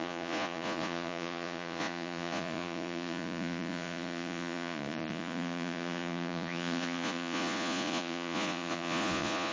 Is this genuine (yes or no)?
no